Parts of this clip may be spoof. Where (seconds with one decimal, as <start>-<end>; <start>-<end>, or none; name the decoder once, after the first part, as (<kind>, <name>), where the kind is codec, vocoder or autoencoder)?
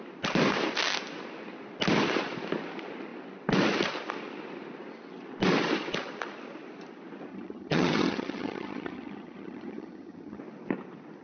7.3-10.4 (vocoder, HiFi-GAN)